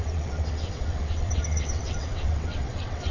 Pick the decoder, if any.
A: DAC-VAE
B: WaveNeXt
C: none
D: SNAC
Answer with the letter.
B